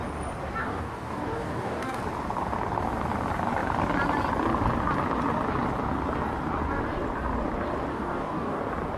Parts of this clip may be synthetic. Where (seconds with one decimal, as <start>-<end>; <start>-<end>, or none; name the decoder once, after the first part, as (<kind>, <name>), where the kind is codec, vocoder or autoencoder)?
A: 0.6-2.0 (codec, DAC); 7.9-8.6